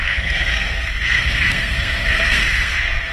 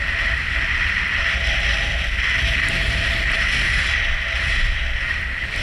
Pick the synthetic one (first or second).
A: first